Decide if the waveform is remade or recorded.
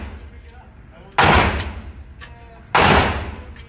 recorded